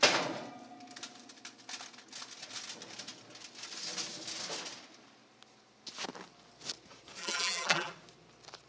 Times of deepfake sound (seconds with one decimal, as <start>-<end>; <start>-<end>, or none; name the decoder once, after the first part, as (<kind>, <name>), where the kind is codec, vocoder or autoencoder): 7.2-7.9 (vocoder, BigVGAN v2)